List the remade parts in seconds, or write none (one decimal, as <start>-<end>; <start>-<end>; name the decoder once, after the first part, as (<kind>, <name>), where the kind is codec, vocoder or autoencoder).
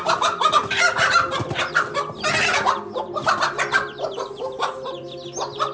none